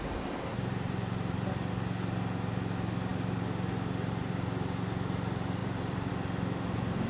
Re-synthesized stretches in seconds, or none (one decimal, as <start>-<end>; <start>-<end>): 0.5-1.7; 5.6-6.1